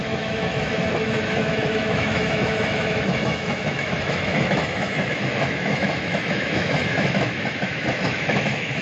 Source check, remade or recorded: remade